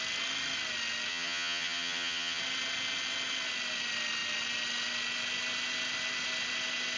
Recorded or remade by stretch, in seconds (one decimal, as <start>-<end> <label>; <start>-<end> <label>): 0.0-1.1 recorded; 1.1-2.4 remade; 2.4-7.0 recorded